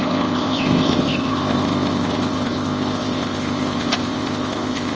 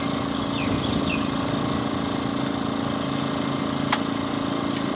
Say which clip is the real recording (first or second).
second